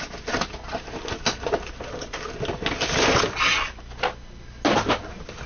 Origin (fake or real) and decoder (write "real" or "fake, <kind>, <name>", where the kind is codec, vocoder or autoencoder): real